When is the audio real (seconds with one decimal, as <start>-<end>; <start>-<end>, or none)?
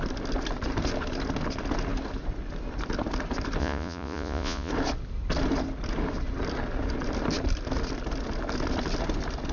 0.0-3.6; 4.7-9.5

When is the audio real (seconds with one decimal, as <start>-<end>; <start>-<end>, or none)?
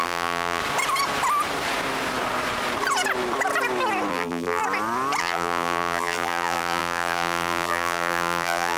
0.6-4.1; 4.6-5.2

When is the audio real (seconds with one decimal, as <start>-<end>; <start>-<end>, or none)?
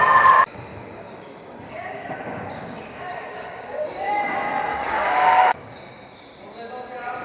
0.0-0.7; 4.1-4.7; 5.8-7.2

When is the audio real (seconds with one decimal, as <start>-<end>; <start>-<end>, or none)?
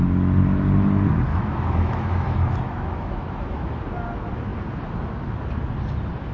0.0-1.3; 3.8-6.3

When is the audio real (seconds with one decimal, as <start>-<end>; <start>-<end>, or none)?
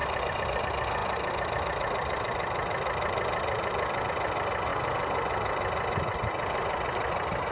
0.6-7.5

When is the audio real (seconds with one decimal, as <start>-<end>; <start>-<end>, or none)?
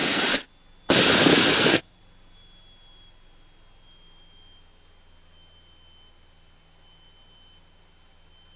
0.5-1.5; 2.0-8.6